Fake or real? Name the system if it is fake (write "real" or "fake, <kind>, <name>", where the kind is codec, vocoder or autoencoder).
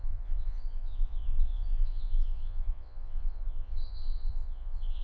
fake, vocoder, Vocos